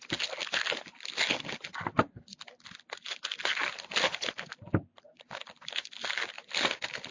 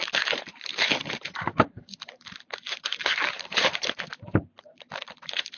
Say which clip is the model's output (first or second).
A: second